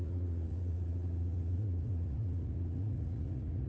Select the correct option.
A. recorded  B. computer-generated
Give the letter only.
B